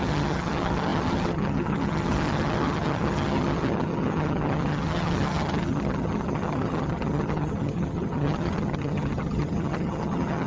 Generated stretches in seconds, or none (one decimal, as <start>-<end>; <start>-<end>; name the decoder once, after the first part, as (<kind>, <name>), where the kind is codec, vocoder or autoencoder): 0.0-10.5 (vocoder, HiFi-GAN)